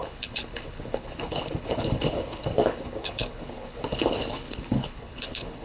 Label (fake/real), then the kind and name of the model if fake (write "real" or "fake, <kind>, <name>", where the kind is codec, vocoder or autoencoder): fake, codec, HILCodec